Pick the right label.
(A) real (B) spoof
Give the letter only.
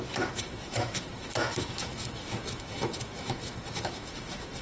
B